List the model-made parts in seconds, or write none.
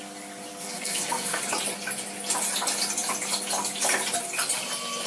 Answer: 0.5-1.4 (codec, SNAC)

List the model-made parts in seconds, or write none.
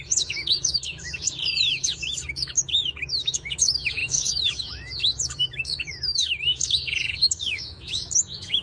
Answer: 0.0-8.6 (autoencoder, DAC-VAE)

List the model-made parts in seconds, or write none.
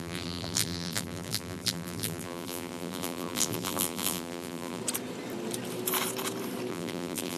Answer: 0.0-4.8 (vocoder, BigVGAN v2); 6.7-7.4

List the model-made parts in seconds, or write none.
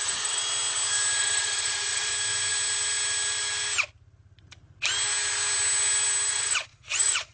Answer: 0.0-0.4 (vocoder, Vocos); 1.2-2.1; 6.3-7.3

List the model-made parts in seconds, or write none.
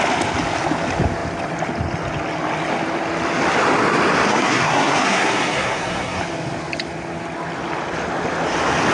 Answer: 4.3-6.2 (codec, SNAC)